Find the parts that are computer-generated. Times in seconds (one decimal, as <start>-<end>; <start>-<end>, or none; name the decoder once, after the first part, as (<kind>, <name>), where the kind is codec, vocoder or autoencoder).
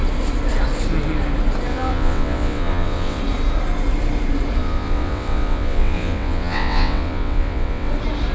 1.7-3.2 (vocoder, WaveNeXt); 4.6-7.9